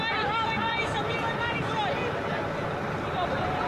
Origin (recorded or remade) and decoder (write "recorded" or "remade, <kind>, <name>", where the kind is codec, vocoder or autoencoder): recorded